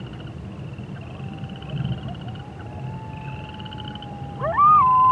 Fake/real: real